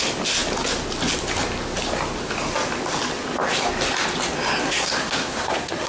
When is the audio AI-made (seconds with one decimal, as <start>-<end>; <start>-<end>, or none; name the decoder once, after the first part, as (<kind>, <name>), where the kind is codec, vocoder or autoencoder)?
4.6-5.9 (codec, SNAC)